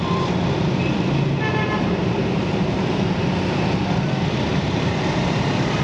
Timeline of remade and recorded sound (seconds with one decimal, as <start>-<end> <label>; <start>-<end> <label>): 0.0-2.0 recorded; 2.0-2.8 remade; 2.8-4.5 recorded; 4.5-5.8 remade